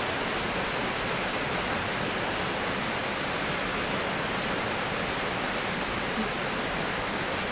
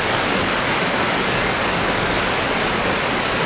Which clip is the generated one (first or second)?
second